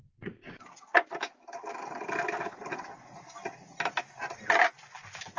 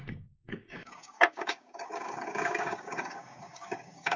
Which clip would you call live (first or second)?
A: first